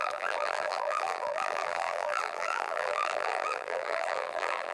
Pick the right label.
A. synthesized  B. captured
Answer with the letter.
A